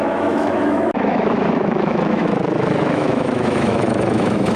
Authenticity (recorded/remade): remade